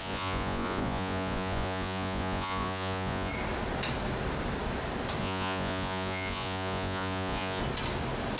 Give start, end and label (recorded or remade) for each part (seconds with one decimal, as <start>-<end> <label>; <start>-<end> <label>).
0.0-3.3 remade; 3.3-5.2 recorded; 5.2-7.6 remade; 7.6-8.4 recorded